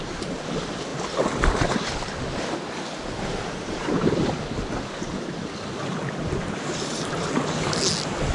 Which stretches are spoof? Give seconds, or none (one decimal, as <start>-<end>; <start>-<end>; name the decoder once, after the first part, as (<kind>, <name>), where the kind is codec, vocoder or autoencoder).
0.0-0.9 (vocoder, BigVGAN v2); 4.7-6.4